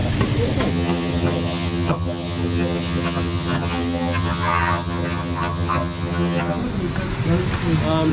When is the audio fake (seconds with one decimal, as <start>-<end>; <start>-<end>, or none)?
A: 0.7-6.6